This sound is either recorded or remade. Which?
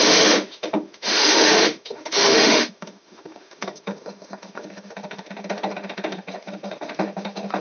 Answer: remade